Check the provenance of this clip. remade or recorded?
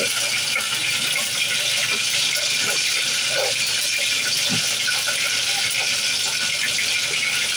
recorded